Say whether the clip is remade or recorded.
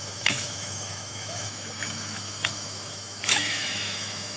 remade